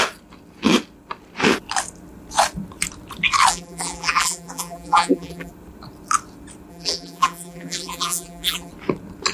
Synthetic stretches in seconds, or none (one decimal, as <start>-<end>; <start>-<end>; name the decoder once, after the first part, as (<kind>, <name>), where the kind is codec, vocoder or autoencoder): 3.5-5.5 (vocoder, BigVGAN v2); 6.7-8.7